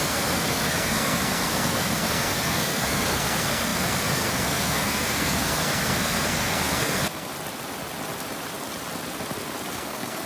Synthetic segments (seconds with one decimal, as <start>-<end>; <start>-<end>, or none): 0.0-7.3; 9.7-10.3